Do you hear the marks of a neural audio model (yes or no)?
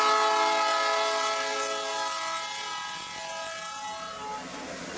no